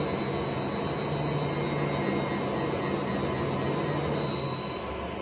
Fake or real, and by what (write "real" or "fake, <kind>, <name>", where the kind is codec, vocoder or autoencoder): real